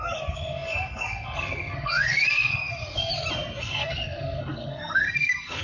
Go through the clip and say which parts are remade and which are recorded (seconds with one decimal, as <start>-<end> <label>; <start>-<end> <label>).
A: 0.0-3.1 remade; 3.1-3.6 recorded; 3.6-5.6 remade